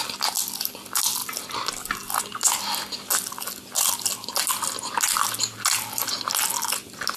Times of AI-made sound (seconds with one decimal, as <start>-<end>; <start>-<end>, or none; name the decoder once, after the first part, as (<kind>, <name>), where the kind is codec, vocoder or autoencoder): none